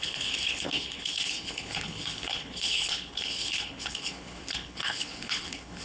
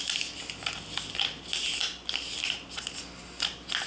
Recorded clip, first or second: second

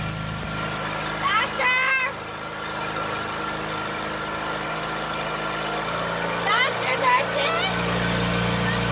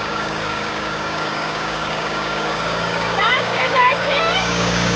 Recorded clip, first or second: first